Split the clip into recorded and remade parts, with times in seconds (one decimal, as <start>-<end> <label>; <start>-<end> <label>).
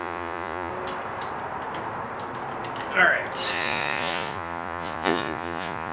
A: 0.0-0.7 remade; 0.7-3.5 recorded; 3.5-5.9 remade